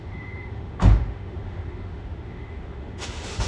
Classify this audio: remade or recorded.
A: remade